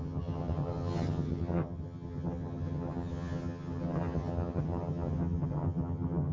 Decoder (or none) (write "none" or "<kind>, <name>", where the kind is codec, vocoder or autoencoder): vocoder, HiFi-GAN